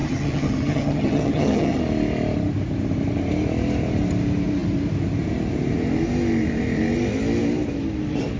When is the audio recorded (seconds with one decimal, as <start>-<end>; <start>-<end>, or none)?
1.8-8.4